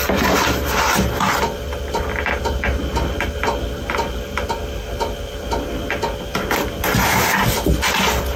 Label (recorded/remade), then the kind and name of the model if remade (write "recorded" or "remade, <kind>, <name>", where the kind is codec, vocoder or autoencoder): recorded